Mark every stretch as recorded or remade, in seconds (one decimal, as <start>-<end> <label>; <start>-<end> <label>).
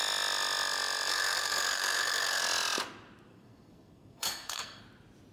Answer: 0.0-1.1 recorded; 1.1-2.4 remade; 2.4-3.3 recorded; 3.3-4.8 remade; 4.8-5.3 recorded